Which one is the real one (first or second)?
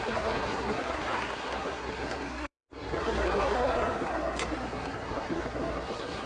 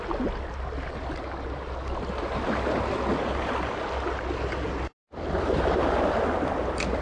second